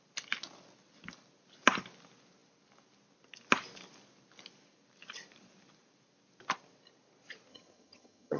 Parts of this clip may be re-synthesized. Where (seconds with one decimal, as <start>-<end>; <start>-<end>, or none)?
7.5-8.4